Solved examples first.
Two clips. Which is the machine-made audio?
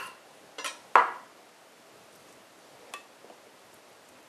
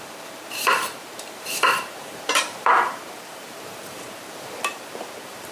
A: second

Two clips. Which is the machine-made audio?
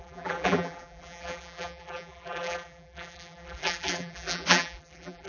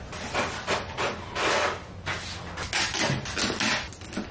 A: first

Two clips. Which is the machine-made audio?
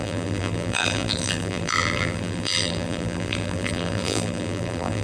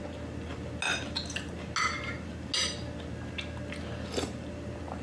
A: first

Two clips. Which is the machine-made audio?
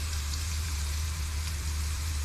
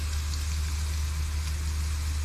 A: first